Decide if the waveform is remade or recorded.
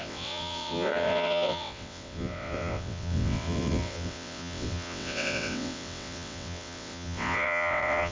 remade